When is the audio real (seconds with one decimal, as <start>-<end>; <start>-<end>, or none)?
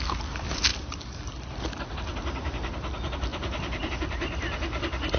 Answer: 0.0-0.7; 1.5-3.3; 3.9-5.2